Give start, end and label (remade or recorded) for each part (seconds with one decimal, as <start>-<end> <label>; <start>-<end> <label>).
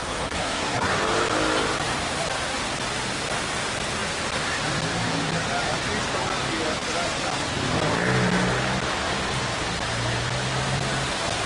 0.0-1.0 remade; 1.0-11.5 recorded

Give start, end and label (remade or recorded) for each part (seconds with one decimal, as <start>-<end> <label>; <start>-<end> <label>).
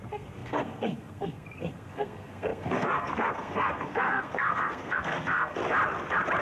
0.0-5.6 remade; 5.6-6.4 recorded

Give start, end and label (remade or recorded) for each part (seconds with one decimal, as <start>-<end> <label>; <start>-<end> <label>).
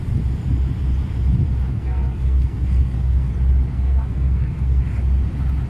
0.0-1.7 recorded; 1.7-3.3 remade; 3.3-3.7 recorded; 3.7-4.8 remade; 4.8-5.7 recorded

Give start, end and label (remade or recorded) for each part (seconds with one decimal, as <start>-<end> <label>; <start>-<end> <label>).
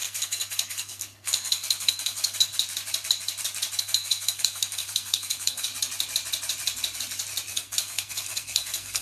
0.0-2.5 remade; 2.5-3.8 recorded; 3.8-5.7 remade; 5.7-7.5 recorded; 7.5-9.0 remade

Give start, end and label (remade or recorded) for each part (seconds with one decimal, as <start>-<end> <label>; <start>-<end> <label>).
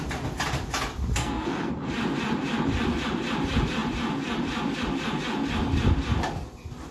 0.0-1.2 recorded; 1.2-1.7 remade; 1.7-6.9 recorded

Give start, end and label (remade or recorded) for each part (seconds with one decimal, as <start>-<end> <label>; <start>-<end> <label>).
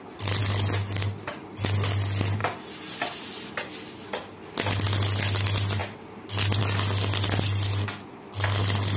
0.0-9.0 recorded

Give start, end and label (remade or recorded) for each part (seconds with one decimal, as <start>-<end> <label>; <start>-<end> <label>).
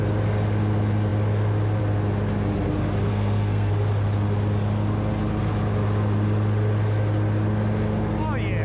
0.0-3.1 recorded; 3.1-3.7 remade; 3.7-8.6 recorded